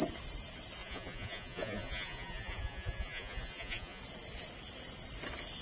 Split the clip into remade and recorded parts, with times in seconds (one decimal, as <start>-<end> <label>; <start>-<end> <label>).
0.0-0.8 recorded; 0.8-4.0 remade; 4.0-5.6 recorded